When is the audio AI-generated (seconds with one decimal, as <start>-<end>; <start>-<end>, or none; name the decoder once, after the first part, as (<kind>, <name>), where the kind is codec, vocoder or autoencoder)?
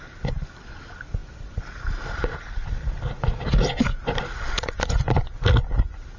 none